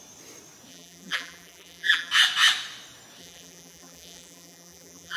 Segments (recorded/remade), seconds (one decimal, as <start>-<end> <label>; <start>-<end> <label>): 0.0-0.7 recorded; 0.7-2.1 remade; 2.1-3.2 recorded; 3.2-5.2 remade